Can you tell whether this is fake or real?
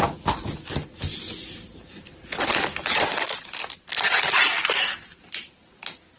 real